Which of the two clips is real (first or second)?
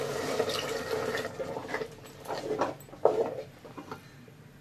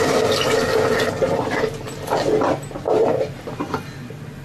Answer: second